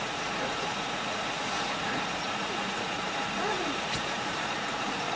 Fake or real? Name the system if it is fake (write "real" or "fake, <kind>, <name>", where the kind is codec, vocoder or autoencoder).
fake, vocoder, Vocos